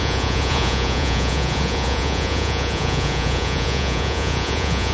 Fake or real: fake